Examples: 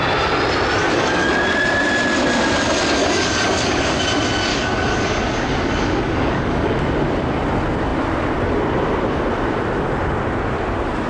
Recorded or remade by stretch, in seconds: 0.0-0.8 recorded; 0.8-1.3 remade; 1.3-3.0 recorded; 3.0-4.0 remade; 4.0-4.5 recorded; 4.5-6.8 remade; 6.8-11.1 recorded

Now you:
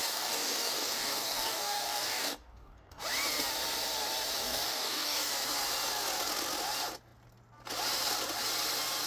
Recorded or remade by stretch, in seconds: 0.0-3.0 remade; 3.0-4.4 recorded; 4.4-5.3 remade; 5.3-9.1 recorded

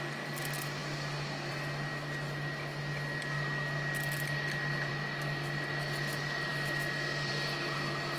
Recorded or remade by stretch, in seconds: 0.0-8.2 recorded

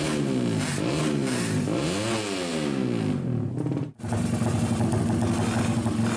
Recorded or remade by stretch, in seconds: 0.0-6.2 recorded

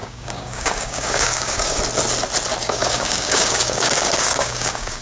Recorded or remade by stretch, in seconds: 0.0-1.8 remade; 1.8-2.6 recorded; 2.6-5.0 remade

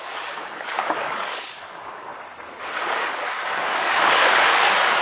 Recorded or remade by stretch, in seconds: 0.0-2.1 remade; 2.1-2.8 recorded; 2.8-5.0 remade

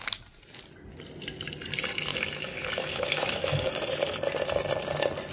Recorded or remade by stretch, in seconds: 0.0-2.1 recorded; 2.1-3.7 remade; 3.7-5.3 recorded

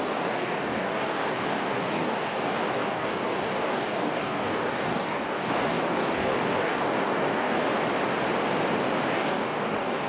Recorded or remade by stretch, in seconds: 0.0-7.6 remade; 7.6-9.1 recorded; 9.1-10.1 remade